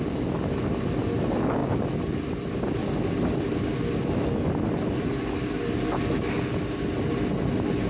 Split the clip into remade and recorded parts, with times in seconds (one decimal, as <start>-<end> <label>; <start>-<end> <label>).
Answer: 0.0-7.9 recorded